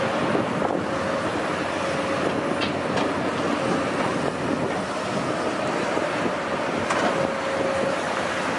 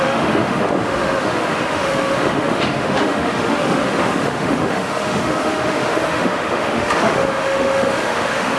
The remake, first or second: second